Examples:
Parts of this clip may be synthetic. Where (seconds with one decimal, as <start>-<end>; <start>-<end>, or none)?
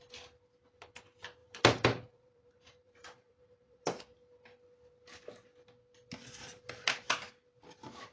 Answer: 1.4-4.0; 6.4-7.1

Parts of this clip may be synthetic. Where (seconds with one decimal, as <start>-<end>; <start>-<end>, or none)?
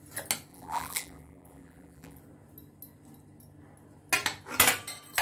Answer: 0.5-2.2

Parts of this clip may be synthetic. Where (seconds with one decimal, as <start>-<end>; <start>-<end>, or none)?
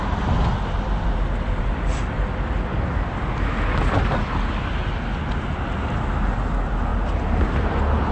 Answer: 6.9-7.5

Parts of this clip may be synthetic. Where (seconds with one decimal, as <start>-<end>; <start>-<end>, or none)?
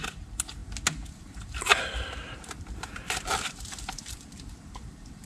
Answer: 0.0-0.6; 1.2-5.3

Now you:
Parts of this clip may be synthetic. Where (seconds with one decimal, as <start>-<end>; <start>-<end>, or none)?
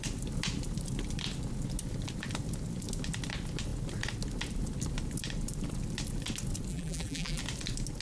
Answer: 6.7-7.4